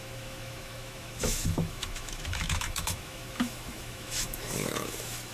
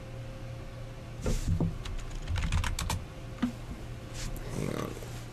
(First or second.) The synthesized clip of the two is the first